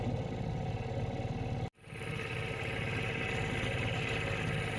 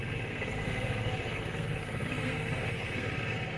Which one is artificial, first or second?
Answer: second